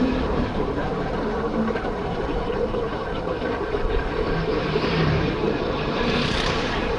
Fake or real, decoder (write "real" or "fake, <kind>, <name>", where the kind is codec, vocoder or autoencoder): fake, vocoder, BigVGAN v2